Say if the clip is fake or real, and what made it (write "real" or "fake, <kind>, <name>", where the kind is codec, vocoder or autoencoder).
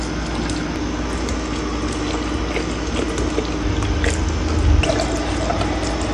real